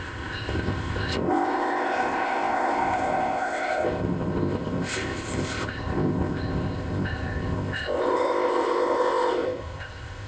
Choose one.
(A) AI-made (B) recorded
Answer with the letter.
A